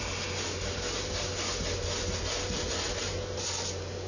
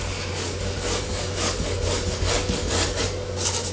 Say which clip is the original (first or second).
first